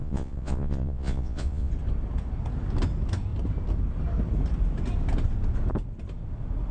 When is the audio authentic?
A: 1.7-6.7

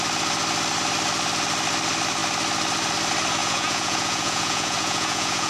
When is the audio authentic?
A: 0.0-3.4